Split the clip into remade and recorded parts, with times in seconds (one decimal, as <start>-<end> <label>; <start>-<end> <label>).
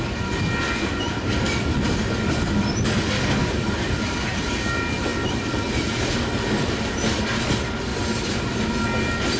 0.0-3.4 recorded; 3.4-3.9 remade; 3.9-7.9 recorded; 7.9-8.7 remade; 8.7-9.4 recorded